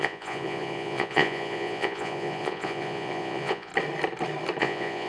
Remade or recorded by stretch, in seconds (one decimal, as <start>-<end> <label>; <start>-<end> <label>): 0.0-3.7 remade; 3.7-4.6 recorded; 4.6-5.1 remade